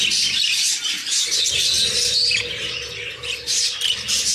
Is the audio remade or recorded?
recorded